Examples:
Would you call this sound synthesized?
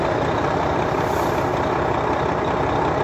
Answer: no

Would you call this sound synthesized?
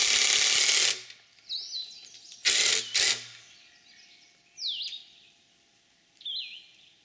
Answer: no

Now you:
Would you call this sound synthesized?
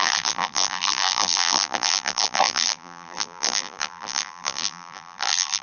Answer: yes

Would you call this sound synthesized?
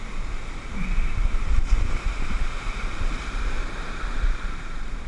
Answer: yes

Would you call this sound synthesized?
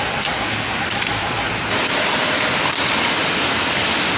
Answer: yes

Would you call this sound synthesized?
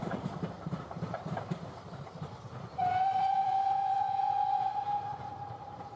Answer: yes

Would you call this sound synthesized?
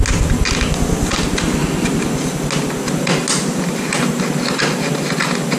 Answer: no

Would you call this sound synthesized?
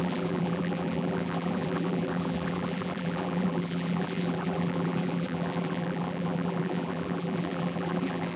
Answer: yes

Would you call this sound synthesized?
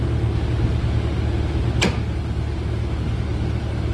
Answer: no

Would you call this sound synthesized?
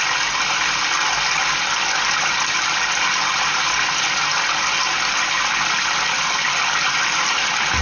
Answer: no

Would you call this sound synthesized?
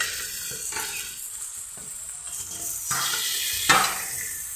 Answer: no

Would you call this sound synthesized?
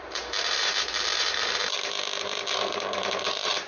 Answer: yes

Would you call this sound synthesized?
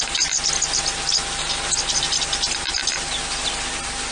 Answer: no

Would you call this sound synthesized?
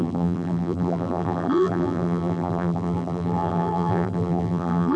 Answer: yes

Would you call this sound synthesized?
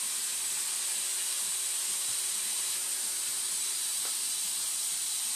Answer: no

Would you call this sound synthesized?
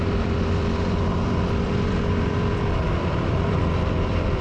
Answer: yes